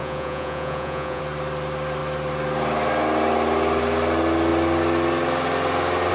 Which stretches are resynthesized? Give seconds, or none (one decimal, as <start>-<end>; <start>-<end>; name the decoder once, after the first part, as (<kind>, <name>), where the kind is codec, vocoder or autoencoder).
0.0-1.2 (vocoder, Vocos)